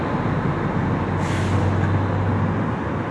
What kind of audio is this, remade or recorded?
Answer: recorded